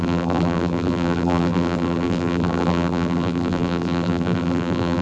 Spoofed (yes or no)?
yes